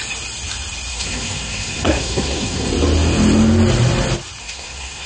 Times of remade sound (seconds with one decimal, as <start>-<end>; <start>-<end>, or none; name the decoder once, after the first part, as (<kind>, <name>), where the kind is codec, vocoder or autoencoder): 0.9-2.7 (codec, SNAC); 4.4-5.1